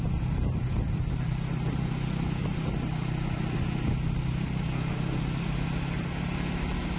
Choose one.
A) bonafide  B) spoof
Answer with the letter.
A